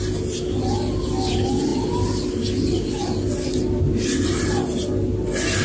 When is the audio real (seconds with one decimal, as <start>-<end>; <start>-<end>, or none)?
0.0-5.6